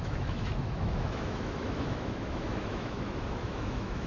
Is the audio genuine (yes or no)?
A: no